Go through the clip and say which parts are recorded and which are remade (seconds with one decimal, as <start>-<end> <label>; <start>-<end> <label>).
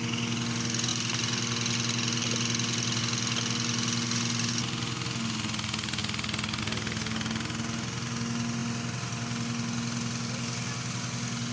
0.0-11.5 recorded